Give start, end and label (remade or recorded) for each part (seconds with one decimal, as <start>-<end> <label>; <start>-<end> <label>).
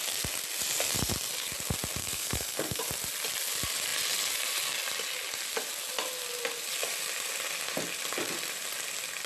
0.0-2.0 recorded; 2.0-2.8 remade; 2.8-9.3 recorded